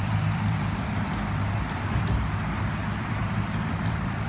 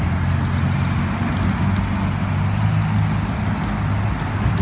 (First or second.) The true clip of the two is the second